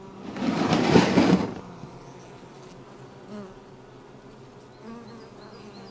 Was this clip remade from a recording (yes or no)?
no